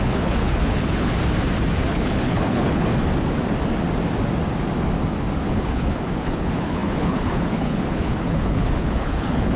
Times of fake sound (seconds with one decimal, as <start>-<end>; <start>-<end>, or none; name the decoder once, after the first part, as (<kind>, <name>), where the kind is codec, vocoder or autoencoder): 0.0-1.1 (codec, HILCodec); 1.9-2.9; 5.5-9.6